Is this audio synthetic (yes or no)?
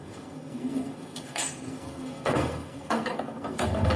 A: yes